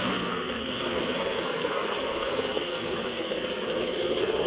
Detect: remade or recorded remade